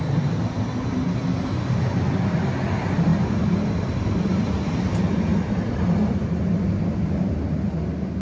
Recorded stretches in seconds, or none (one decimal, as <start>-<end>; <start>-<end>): 0.0-8.2